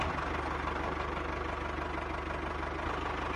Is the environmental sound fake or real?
real